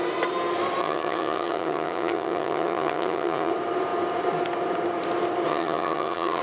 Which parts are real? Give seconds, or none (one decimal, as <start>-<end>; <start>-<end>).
0.0-0.8; 3.5-5.5